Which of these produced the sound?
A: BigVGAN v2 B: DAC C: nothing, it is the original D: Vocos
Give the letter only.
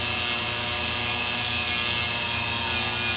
C